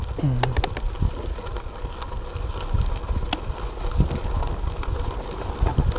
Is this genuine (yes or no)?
yes